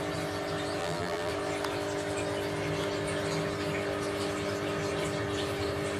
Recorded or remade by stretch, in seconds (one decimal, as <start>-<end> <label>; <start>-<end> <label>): 0.0-0.8 recorded; 0.8-1.3 remade; 1.3-6.0 recorded